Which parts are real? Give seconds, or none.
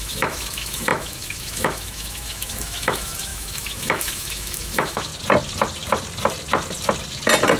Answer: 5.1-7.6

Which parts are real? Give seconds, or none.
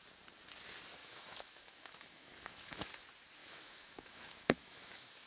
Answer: 0.0-1.0; 2.9-3.4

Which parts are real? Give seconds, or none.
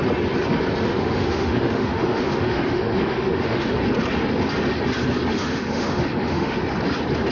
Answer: 0.0-0.8; 3.7-5.3; 6.6-7.3